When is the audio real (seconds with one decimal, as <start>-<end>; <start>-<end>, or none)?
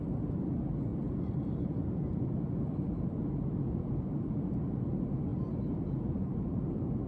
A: 0.0-3.5; 4.7-5.3; 6.6-7.1